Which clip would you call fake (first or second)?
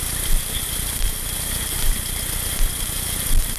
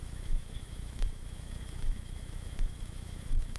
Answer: second